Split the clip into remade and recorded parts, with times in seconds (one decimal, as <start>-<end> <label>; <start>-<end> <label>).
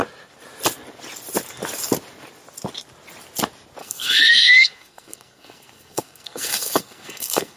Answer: 0.0-3.8 recorded; 3.8-7.6 remade